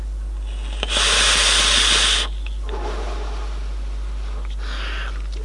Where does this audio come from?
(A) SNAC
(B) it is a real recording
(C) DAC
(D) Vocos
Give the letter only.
B